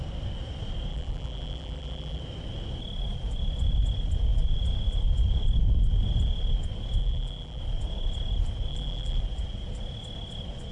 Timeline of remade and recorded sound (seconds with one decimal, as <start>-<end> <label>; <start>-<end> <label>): 0.0-0.9 recorded; 0.9-2.2 remade; 2.2-7.0 recorded; 7.0-7.6 remade; 7.6-8.7 recorded; 8.7-9.2 remade; 9.2-10.7 recorded